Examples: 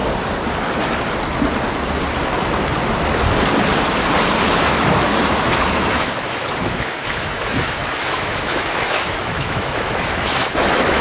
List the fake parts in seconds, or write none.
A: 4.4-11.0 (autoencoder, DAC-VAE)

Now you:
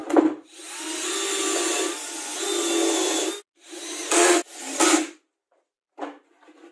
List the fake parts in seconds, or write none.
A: none